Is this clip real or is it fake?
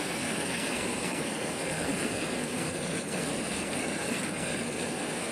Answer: fake